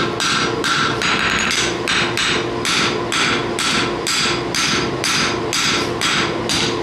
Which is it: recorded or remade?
recorded